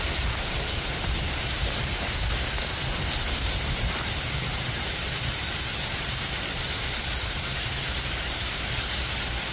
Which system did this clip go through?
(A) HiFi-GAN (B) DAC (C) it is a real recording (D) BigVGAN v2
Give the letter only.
D